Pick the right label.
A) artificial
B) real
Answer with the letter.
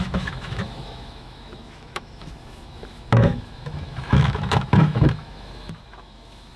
A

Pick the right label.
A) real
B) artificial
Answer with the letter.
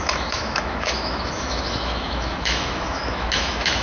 B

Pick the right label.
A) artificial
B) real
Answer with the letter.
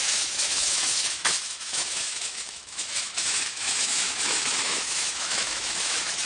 A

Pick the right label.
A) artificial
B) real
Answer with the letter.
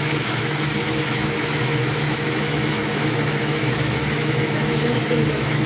A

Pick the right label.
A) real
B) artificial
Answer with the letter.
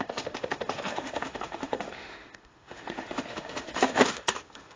B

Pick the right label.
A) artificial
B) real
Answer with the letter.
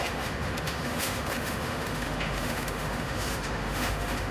A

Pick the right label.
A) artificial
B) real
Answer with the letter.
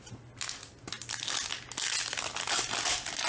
B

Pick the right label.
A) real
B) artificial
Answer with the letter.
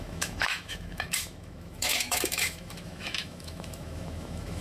B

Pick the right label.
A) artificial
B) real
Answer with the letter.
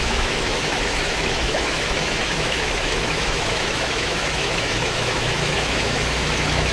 A